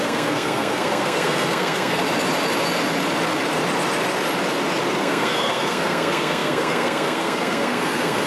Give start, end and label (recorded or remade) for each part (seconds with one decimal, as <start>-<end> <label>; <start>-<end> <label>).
0.0-2.0 remade; 2.0-5.0 recorded; 5.0-8.3 remade